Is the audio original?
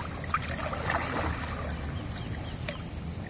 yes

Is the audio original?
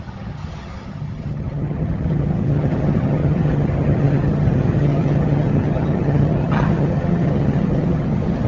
no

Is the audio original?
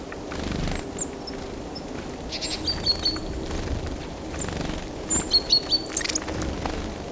yes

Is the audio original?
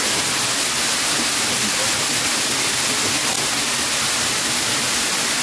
yes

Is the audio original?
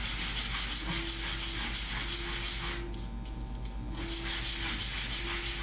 yes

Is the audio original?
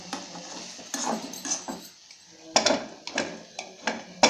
yes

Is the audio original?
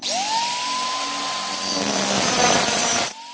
yes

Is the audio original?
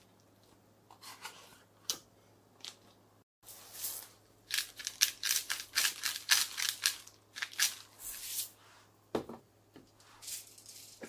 yes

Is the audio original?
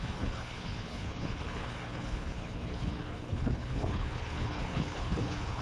no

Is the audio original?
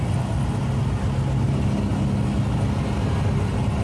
yes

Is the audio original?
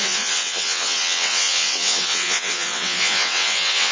no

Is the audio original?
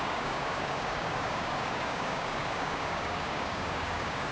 no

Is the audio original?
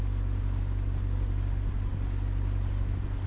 yes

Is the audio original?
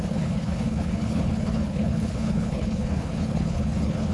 no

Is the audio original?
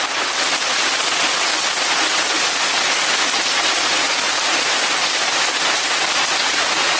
yes